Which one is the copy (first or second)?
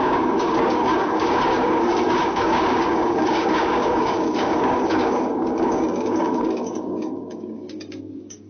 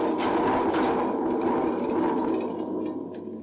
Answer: first